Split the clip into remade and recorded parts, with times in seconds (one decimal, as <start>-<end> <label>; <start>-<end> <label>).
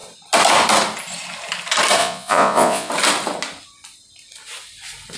0.0-2.0 recorded; 2.0-2.9 remade; 2.9-5.2 recorded